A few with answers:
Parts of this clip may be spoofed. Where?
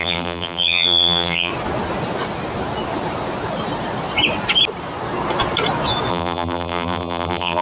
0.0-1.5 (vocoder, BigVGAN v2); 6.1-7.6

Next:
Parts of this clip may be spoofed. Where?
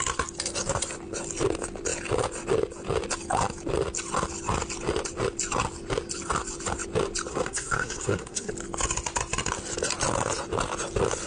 7.3-8.5 (codec, SNAC)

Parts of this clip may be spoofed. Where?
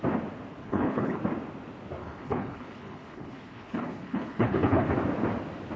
0.6-1.2 (codec, HILCodec); 2.0-4.9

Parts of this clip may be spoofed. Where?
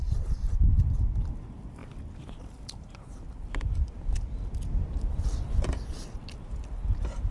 1.8-6.2 (vocoder, BigVGAN v2)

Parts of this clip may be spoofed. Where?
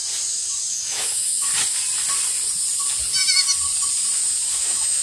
0.7-1.5 (autoencoder, DAC-VAE); 4.5-5.0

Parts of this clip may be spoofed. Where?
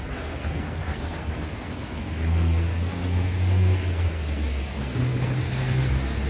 0.0-6.3 (codec, SNAC)